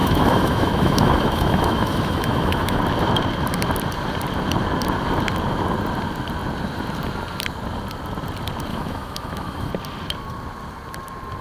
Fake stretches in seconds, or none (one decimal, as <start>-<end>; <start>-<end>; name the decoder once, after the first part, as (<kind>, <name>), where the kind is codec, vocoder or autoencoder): 0.0-2.8 (autoencoder, DAC-VAE); 8.7-9.7